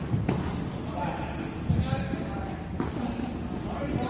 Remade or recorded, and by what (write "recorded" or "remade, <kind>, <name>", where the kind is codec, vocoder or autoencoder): recorded